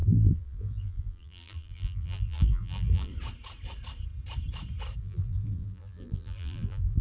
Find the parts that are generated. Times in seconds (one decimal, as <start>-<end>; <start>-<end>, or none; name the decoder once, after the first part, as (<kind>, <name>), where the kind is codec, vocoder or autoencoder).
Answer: 0.0-3.1 (vocoder, BigVGAN v2); 5.0-7.0